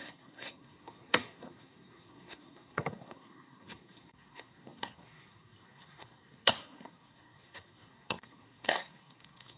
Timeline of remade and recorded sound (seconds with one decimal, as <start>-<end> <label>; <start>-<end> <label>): 0.0-9.6 remade